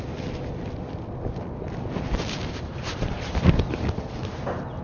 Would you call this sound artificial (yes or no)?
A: no